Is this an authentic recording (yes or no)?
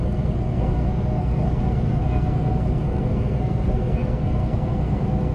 no